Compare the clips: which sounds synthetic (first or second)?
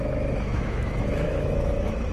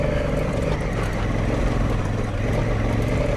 first